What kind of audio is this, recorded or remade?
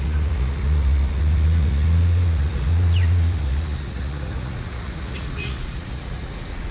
remade